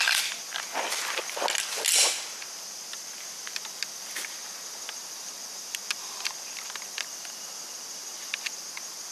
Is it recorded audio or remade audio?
recorded